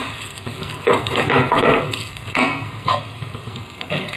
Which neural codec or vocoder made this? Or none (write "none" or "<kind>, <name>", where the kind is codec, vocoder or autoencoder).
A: codec, SNAC